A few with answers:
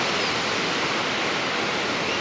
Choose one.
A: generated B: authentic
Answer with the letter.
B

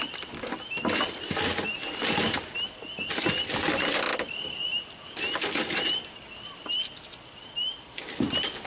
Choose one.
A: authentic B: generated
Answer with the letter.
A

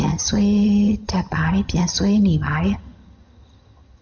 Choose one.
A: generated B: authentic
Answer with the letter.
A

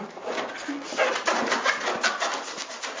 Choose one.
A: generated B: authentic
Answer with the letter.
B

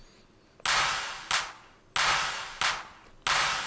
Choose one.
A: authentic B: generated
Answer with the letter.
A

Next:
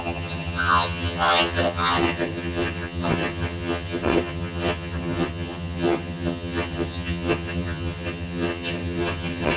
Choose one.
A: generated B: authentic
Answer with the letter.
A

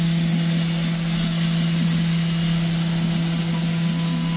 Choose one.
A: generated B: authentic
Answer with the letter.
B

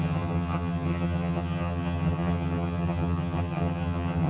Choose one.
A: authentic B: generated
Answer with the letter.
B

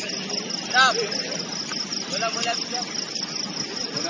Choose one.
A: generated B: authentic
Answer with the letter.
B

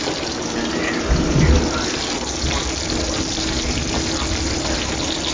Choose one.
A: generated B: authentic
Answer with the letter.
B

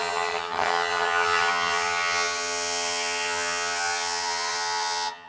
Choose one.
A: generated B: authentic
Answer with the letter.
A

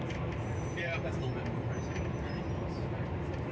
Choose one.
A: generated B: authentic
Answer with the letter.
B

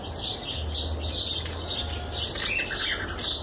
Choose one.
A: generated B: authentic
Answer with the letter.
B